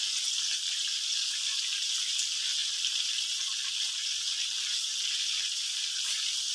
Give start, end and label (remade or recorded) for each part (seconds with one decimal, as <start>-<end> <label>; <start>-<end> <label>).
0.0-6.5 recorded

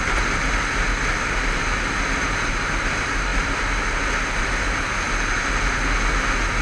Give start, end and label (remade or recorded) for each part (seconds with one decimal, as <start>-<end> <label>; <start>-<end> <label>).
0.0-6.6 recorded

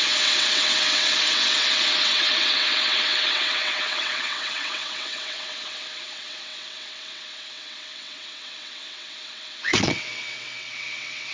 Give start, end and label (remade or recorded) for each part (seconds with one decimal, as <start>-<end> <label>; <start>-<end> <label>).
0.0-11.3 remade

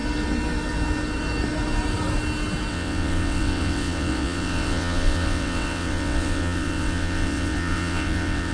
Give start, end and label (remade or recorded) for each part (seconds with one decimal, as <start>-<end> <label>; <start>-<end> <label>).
0.0-2.7 recorded; 2.7-8.5 remade

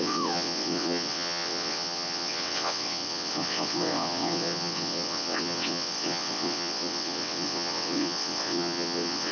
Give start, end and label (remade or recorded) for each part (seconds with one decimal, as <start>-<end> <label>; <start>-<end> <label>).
0.0-9.3 remade

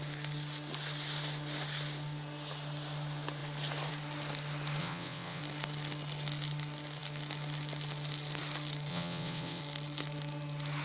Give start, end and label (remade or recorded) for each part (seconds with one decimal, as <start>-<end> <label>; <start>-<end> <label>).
0.0-4.8 recorded; 4.8-5.4 remade; 5.4-8.9 recorded; 8.9-9.6 remade; 9.6-10.8 recorded

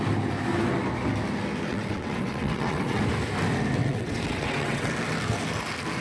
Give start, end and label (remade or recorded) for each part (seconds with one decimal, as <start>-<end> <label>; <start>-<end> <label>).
0.0-1.7 recorded; 1.7-3.0 remade; 3.0-3.8 recorded; 3.8-4.9 remade; 4.9-6.0 recorded